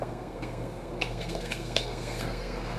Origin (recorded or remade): remade